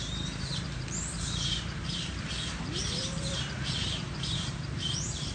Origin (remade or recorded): remade